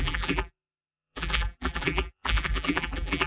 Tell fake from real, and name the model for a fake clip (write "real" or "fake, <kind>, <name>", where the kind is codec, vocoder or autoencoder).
fake, vocoder, BigVGAN v2